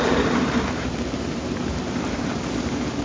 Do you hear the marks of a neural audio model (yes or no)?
yes